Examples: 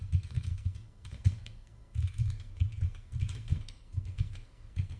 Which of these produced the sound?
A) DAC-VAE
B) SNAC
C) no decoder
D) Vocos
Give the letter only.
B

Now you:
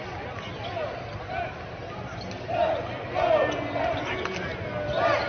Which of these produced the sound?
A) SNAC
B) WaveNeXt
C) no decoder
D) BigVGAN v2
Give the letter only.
C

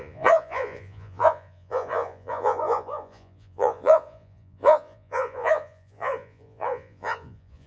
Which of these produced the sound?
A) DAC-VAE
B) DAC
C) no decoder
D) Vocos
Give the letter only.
D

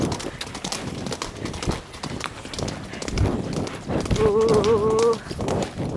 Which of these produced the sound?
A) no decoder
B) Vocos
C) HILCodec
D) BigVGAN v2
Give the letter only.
A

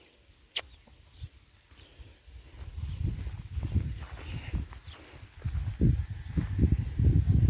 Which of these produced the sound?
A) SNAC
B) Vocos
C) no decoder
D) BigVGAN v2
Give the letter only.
C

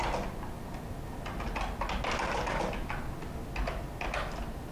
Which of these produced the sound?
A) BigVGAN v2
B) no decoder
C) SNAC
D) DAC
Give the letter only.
B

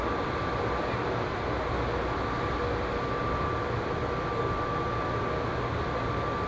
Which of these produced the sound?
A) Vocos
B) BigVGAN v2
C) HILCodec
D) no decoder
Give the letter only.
D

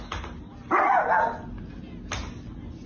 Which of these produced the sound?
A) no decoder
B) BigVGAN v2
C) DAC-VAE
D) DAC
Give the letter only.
A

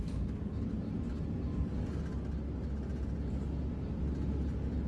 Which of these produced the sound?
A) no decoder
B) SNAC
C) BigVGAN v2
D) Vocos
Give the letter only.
A